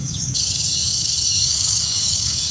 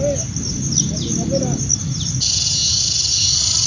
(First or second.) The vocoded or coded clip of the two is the first